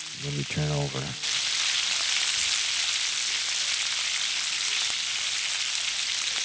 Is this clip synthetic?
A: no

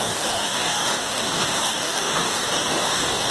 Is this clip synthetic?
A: yes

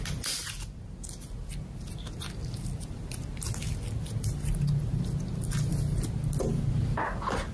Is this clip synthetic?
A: no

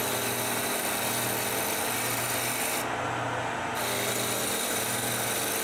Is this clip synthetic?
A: no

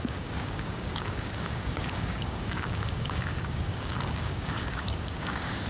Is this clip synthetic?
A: yes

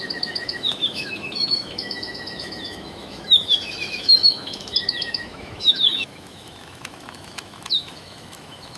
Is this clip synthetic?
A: yes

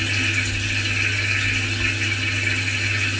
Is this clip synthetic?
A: no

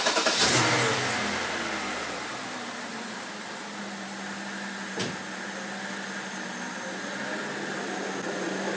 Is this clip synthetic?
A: no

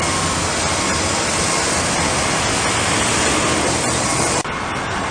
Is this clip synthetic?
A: no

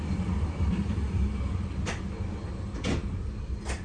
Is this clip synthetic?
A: no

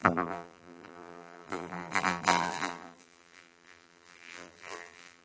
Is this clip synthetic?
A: yes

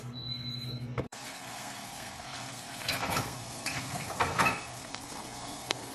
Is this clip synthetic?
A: yes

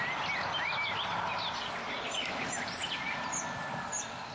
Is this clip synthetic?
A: no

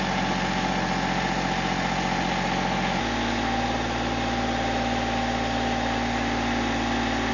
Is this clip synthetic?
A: no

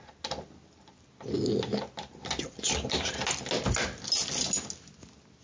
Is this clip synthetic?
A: no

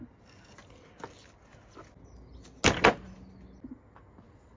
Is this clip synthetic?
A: no